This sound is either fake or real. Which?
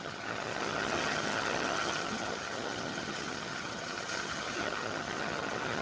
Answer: fake